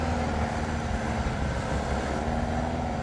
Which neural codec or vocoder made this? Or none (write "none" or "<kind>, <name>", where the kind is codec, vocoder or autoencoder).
none